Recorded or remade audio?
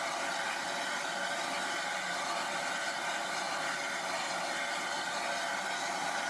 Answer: recorded